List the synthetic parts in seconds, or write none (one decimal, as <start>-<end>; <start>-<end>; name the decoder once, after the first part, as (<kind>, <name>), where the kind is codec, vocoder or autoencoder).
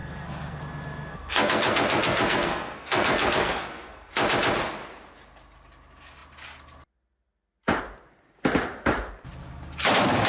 0.0-0.6 (codec, SNAC); 1.1-4.1